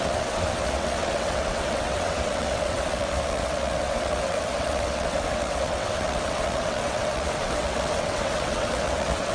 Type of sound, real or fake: fake